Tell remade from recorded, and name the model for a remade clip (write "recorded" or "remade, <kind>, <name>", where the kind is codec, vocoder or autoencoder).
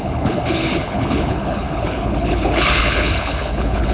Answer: remade, codec, HILCodec